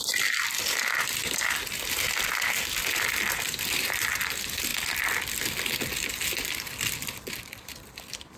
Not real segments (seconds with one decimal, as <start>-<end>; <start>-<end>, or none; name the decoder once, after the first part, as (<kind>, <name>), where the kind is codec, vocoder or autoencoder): 0.0-1.2 (vocoder, BigVGAN v2); 3.3-4.7; 6.1-8.4